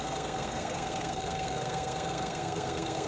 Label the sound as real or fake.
fake